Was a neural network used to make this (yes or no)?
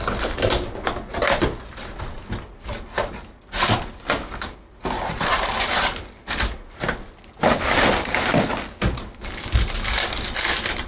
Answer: no